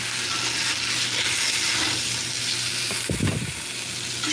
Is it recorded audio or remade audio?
recorded